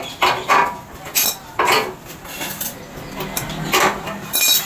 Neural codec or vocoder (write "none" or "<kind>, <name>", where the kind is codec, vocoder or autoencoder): none